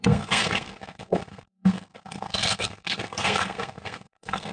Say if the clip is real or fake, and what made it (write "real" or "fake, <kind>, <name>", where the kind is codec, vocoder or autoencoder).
fake, codec, SNAC